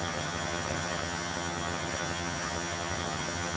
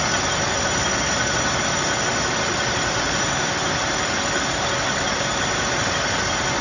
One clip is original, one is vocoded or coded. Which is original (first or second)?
second